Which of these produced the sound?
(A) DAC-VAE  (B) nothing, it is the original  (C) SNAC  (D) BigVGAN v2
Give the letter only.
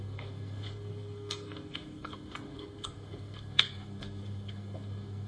C